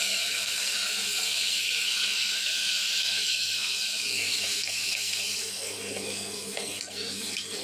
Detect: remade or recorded remade